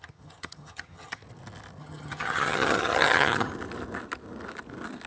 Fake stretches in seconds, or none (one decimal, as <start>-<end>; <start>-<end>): 0.0-1.2; 1.8-3.5